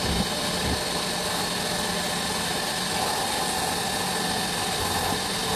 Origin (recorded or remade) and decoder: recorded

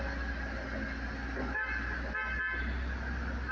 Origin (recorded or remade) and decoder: recorded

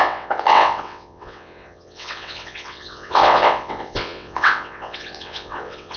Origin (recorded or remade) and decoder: remade, vocoder, WaveNeXt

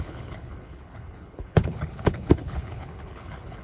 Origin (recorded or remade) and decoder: remade, codec, HILCodec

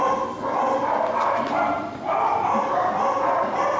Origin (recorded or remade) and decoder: recorded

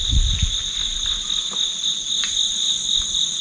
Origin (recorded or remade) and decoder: recorded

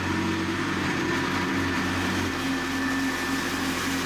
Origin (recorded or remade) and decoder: recorded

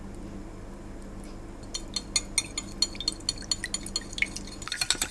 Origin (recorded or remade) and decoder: recorded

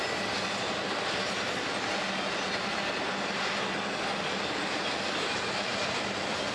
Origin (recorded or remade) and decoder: recorded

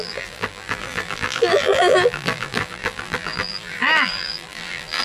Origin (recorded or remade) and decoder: remade, vocoder, BigVGAN v2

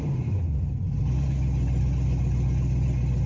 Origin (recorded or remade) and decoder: recorded